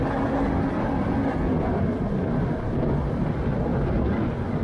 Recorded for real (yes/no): yes